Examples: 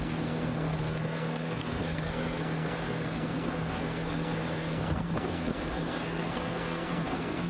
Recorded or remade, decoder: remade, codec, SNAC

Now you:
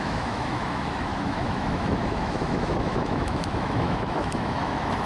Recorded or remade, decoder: remade, autoencoder, DAC-VAE